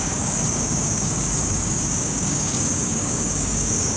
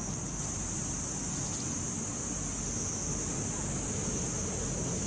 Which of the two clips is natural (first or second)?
second